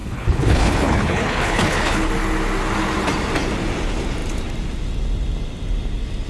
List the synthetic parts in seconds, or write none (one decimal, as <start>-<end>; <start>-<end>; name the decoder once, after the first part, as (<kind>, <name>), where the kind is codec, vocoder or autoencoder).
0.0-2.1 (codec, HILCodec)